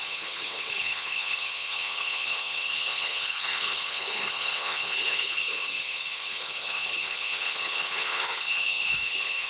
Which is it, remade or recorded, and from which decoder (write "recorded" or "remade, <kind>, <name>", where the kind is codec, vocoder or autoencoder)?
remade, codec, HILCodec